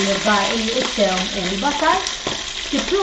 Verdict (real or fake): real